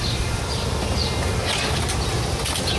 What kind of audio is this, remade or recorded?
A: recorded